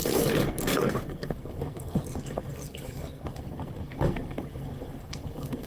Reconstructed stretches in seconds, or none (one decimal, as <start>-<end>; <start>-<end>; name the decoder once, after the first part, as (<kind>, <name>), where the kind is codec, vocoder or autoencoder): 0.0-5.7 (codec, SNAC)